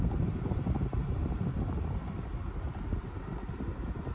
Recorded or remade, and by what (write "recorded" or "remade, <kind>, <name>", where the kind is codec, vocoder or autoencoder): recorded